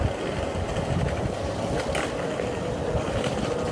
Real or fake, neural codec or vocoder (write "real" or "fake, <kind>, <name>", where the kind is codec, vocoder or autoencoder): real